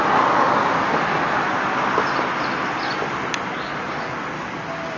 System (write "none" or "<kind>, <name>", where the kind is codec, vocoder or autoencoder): none